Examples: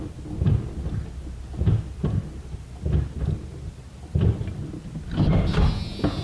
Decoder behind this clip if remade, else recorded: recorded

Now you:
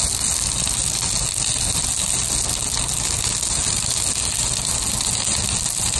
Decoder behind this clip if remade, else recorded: recorded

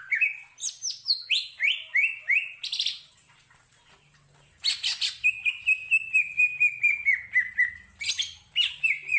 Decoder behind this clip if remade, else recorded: recorded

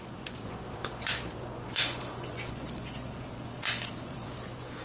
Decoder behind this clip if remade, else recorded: remade, vocoder, Vocos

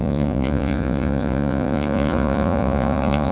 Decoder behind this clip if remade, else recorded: remade, vocoder, Vocos